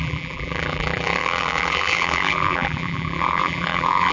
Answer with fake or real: fake